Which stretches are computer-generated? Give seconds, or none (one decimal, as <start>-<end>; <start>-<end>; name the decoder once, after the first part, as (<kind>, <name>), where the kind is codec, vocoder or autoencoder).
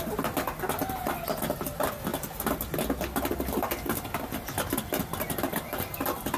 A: none